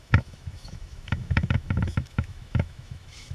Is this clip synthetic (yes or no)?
yes